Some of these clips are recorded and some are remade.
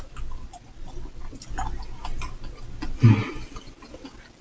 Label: recorded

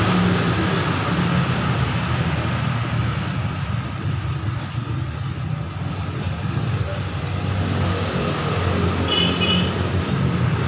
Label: recorded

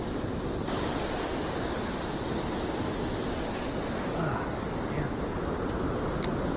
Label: recorded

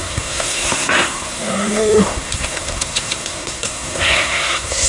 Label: remade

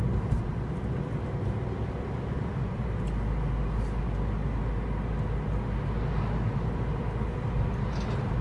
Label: recorded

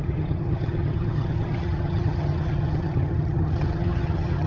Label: remade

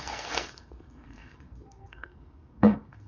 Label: remade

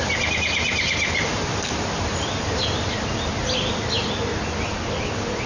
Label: recorded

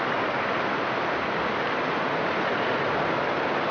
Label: recorded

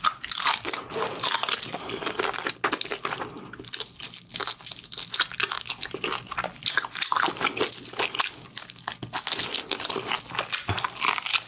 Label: recorded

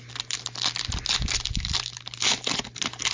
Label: recorded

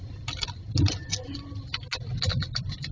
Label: recorded